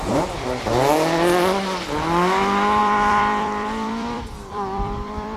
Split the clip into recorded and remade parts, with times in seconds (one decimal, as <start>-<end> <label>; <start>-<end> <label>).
0.0-2.8 recorded; 2.8-5.4 remade